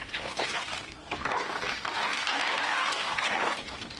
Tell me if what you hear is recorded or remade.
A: remade